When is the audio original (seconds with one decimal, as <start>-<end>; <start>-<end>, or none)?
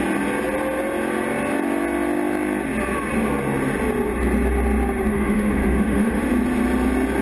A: 0.0-5.1; 6.3-7.2